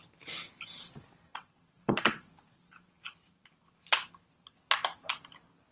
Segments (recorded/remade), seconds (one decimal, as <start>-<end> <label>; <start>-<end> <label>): 0.0-1.3 recorded; 1.3-2.3 remade; 2.3-5.7 recorded